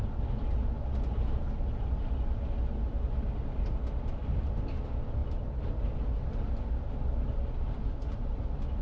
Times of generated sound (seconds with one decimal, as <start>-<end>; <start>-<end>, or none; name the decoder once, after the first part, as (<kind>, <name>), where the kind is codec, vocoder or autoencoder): none